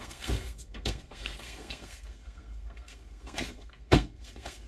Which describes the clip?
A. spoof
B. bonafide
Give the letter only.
A